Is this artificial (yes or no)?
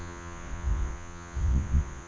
yes